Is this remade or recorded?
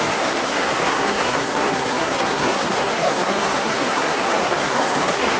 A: remade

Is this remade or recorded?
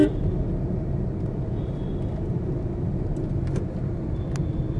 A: recorded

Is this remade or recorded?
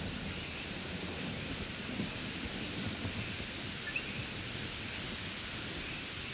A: recorded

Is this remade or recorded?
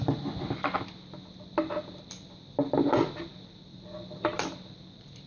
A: recorded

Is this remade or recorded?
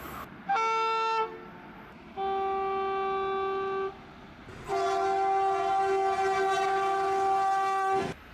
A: recorded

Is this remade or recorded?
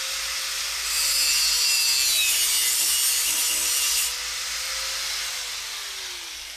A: recorded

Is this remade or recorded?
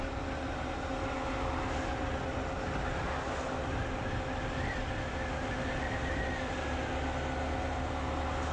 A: recorded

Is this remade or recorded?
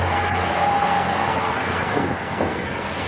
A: remade